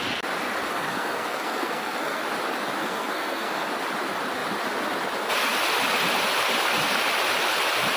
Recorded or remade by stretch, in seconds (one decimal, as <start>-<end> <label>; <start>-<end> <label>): 0.0-0.7 recorded; 0.7-2.2 remade; 2.2-2.8 recorded; 2.8-3.7 remade; 3.7-8.0 recorded